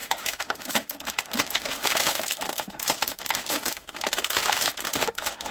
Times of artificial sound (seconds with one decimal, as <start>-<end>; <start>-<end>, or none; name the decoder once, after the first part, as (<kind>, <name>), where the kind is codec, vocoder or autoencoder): 0.0-5.5 (autoencoder, DAC-VAE)